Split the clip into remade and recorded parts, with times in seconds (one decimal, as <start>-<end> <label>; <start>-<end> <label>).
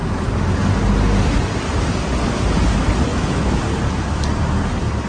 0.0-3.1 recorded; 3.1-3.6 remade; 3.6-5.1 recorded